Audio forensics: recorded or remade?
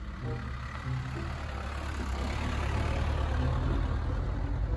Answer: recorded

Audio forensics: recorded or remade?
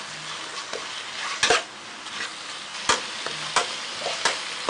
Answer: recorded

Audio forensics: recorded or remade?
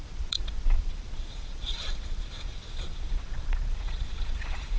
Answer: remade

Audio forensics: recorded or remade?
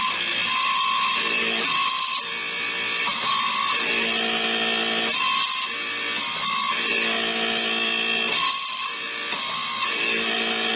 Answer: recorded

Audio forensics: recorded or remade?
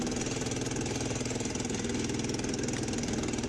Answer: recorded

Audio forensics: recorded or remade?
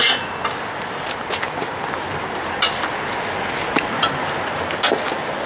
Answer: recorded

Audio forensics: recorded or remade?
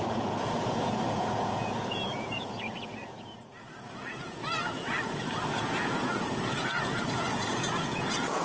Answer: remade